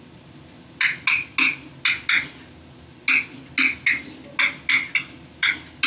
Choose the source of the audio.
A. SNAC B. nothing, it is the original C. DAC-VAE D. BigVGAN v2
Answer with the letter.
B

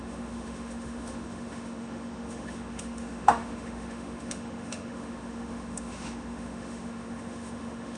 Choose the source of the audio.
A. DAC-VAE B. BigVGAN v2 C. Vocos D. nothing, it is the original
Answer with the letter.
A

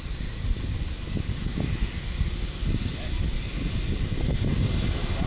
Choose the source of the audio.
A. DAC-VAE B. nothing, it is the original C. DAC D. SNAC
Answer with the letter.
B